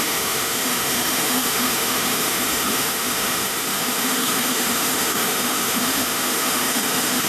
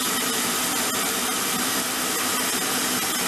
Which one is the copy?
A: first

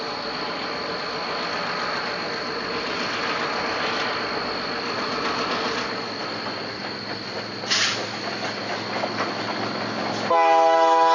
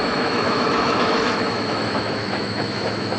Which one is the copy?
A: second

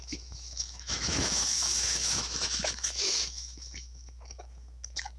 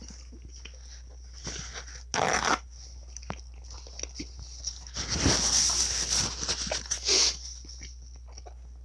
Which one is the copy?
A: first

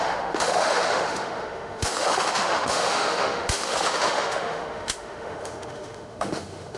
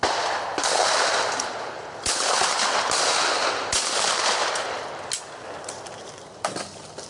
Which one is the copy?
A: first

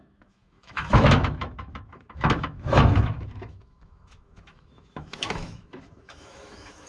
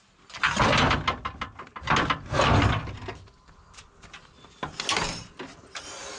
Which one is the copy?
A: first